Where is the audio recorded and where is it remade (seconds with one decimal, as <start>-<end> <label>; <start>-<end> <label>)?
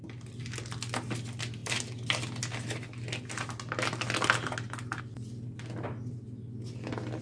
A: 0.0-7.2 recorded